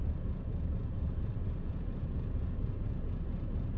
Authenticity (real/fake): fake